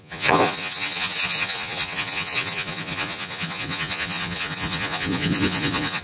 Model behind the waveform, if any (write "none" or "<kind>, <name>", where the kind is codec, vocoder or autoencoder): vocoder, Vocos